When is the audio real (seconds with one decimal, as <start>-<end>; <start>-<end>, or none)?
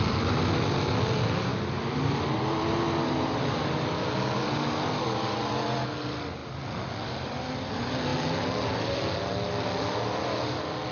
0.0-10.9